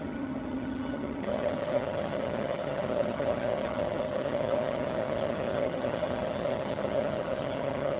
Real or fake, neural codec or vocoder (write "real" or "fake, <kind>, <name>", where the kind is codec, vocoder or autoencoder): fake, vocoder, HiFi-GAN